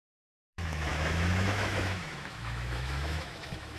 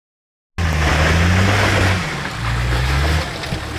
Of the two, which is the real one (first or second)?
second